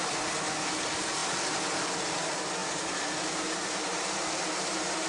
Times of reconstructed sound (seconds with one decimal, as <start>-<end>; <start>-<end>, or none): 2.6-5.1